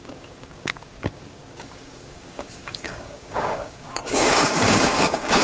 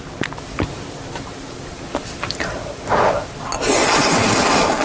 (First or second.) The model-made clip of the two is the first